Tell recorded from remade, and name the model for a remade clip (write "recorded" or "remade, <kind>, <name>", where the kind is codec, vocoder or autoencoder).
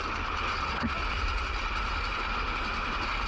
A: recorded